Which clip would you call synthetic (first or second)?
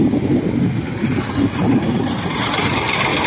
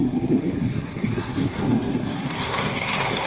second